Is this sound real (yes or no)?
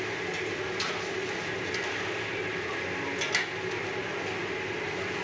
yes